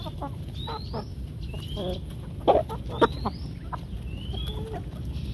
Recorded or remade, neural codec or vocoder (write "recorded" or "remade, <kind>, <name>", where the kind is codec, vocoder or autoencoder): recorded